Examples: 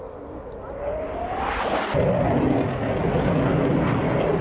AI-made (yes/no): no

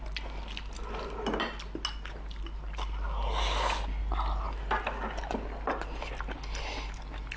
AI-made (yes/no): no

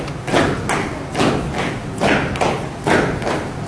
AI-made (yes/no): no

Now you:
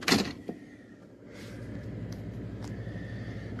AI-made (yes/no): no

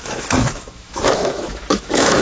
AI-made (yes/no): yes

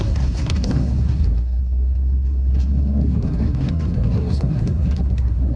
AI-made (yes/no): yes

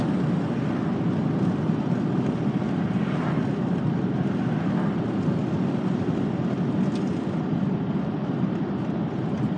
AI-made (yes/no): no